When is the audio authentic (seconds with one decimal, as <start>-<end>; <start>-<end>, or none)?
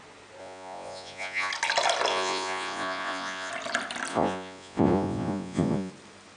0.0-0.4; 1.5-2.1; 3.5-4.1; 5.9-6.4